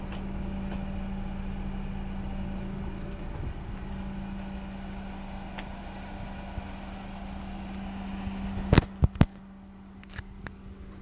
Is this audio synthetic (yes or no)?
no